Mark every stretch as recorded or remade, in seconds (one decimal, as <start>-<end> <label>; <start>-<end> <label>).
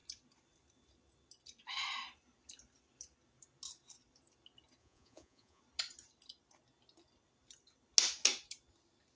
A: 0.0-4.8 recorded; 4.8-5.6 remade; 5.6-9.2 recorded